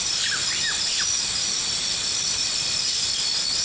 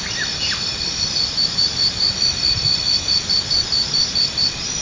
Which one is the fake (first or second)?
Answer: first